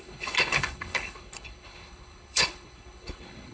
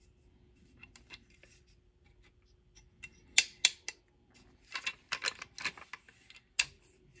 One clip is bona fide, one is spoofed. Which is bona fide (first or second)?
second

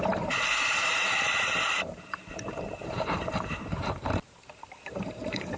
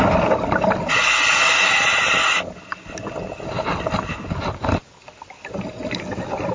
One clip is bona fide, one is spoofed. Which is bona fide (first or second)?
second